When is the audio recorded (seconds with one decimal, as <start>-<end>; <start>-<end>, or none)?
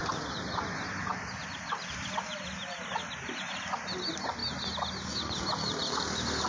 0.0-6.5